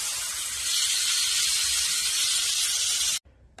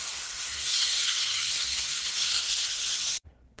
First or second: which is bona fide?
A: first